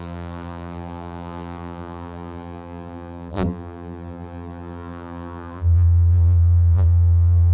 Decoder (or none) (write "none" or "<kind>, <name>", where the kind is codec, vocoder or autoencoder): vocoder, BigVGAN v2